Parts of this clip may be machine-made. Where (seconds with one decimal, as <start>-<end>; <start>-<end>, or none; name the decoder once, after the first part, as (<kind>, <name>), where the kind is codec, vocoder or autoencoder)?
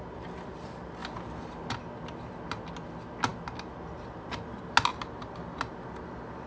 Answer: none